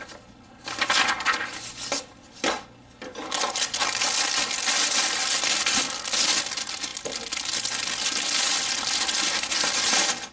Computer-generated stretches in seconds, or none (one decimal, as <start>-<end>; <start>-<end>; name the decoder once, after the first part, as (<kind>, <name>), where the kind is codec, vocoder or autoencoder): none